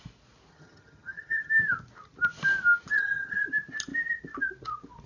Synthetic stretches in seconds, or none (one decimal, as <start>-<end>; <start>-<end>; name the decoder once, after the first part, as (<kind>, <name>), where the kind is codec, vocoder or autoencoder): 0.5-1.5 (vocoder, HiFi-GAN); 2.9-3.4